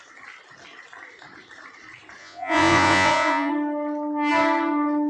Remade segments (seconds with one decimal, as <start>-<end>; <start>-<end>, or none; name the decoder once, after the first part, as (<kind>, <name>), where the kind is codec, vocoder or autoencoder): 2.2-3.5 (vocoder, Vocos)

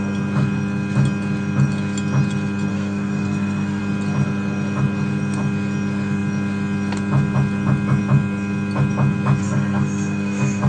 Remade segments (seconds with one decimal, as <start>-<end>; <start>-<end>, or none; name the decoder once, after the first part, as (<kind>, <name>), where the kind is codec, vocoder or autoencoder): 2.7-3.8 (codec, SNAC); 9.4-10.7